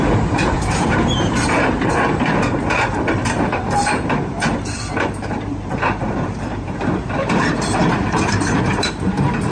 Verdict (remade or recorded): remade